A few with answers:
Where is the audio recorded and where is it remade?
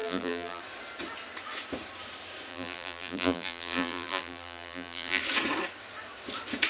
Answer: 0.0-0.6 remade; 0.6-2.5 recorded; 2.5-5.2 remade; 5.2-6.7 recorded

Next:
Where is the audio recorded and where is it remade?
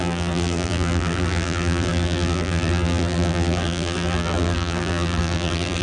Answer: 0.0-5.8 remade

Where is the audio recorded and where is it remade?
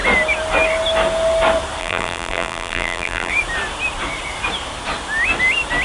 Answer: 0.0-1.8 recorded; 1.8-3.3 remade; 3.3-5.8 recorded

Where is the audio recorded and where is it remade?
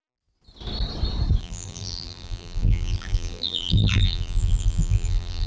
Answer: 0.0-1.4 recorded; 1.4-5.5 remade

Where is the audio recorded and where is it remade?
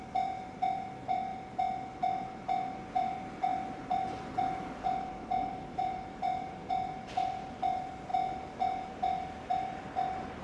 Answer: 0.0-1.3 remade; 1.3-2.0 recorded; 2.0-8.1 remade; 8.1-8.9 recorded; 8.9-10.4 remade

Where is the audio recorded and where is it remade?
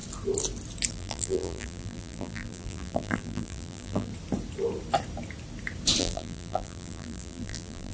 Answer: 0.0-0.9 recorded; 0.9-4.1 remade; 4.1-6.0 recorded; 6.0-7.9 remade